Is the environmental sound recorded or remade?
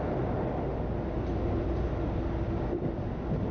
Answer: recorded